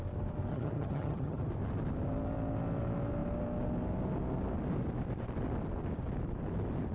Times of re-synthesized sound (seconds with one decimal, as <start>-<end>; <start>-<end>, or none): 0.5-1.4